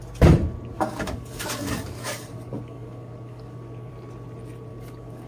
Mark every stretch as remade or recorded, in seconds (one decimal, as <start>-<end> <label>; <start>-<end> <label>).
0.0-0.7 recorded; 0.7-3.9 remade; 3.9-4.7 recorded; 4.7-5.3 remade